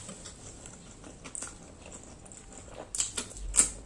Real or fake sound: real